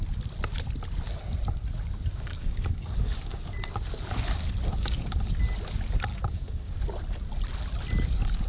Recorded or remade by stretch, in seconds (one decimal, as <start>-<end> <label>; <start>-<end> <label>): 0.0-2.3 recorded; 2.3-3.5 remade; 3.5-4.7 recorded; 4.7-5.3 remade; 5.3-6.1 recorded; 6.1-6.8 remade; 6.8-8.5 recorded